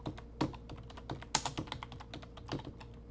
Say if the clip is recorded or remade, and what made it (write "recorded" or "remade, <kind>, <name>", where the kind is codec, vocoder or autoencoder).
recorded